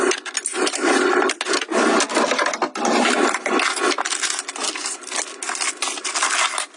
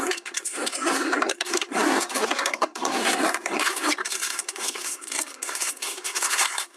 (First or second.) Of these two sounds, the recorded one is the first